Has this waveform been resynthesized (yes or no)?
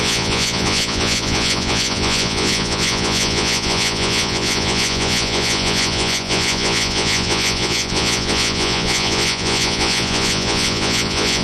yes